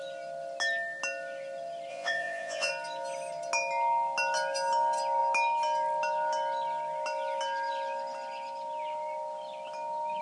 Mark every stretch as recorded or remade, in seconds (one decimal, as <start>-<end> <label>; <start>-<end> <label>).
0.0-1.9 recorded; 1.9-2.7 remade; 2.7-10.2 recorded